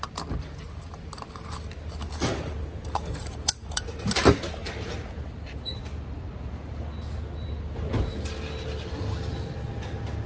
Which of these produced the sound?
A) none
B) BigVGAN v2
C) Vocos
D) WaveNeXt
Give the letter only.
A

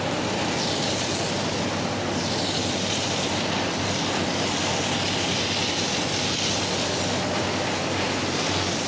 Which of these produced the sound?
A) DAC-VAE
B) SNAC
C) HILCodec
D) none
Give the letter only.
D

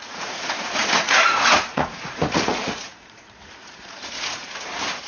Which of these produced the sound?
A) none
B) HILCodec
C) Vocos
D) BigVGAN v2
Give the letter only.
C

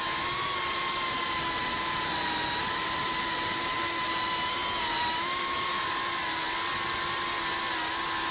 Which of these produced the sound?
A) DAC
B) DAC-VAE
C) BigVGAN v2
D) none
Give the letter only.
D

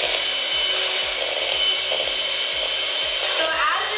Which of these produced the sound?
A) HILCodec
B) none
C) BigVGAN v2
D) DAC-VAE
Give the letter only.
B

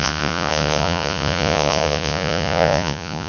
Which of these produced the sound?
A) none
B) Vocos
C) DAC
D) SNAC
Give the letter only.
B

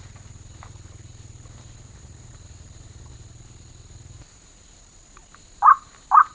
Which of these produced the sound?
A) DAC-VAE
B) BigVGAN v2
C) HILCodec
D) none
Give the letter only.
D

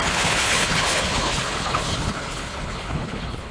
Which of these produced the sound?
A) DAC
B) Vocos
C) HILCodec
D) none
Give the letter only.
C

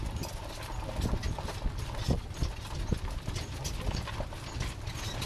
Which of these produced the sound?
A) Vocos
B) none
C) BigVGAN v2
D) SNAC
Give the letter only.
B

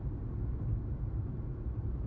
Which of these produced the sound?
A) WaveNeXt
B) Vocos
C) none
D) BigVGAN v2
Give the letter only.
C